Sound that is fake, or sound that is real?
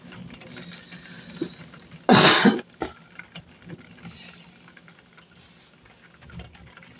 real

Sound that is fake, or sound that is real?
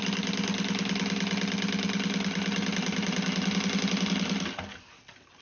real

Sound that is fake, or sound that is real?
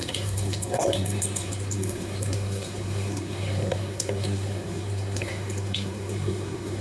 fake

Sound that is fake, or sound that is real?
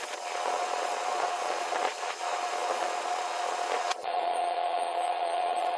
fake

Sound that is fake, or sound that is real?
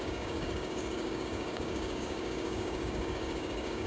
fake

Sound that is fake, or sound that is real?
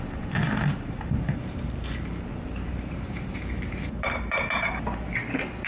fake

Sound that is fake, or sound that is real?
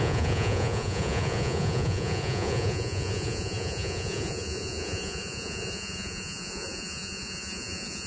fake